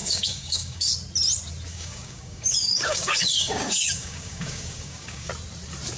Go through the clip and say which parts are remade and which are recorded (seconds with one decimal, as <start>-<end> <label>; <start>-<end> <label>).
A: 0.0-0.9 remade; 0.9-1.7 recorded; 1.7-5.3 remade; 5.3-6.0 recorded